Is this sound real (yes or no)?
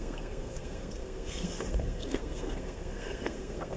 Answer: no